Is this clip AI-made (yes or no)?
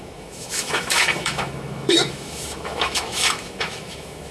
yes